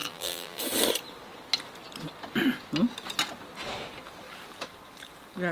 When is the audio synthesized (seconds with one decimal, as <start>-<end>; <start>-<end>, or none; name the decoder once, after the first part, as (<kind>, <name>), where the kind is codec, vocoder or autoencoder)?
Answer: 0.0-0.6 (vocoder, BigVGAN v2)